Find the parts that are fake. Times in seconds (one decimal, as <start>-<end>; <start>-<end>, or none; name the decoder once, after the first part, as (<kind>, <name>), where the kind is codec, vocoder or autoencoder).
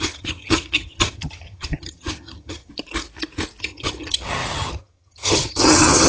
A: 0.0-2.7 (vocoder, HiFi-GAN); 3.6-6.1